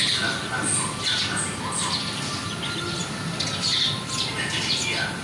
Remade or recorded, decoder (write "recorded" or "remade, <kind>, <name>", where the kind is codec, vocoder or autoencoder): recorded